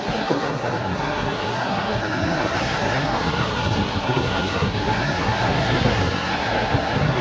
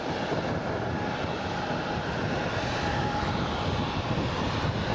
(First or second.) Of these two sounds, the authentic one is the second